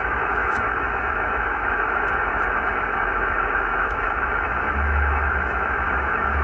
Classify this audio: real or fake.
fake